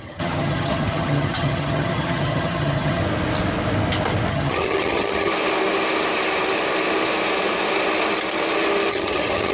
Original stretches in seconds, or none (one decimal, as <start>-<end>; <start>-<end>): 3.0-4.3; 5.3-8.9